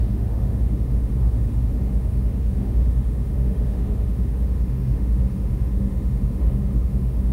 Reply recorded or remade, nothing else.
remade